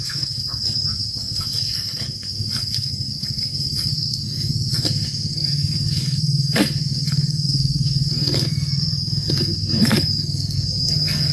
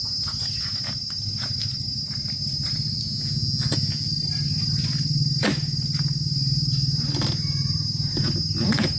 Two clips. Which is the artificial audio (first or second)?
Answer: first